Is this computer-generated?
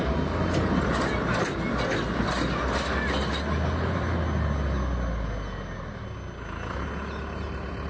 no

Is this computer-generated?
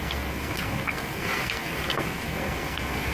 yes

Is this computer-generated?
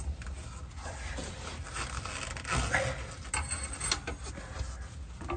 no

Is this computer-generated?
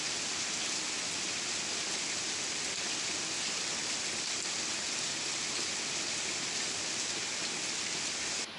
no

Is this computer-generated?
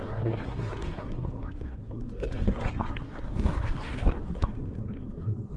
yes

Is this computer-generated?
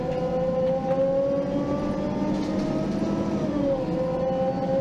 no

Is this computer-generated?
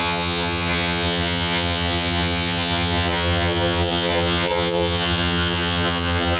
yes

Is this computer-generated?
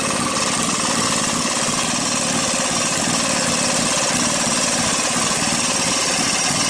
yes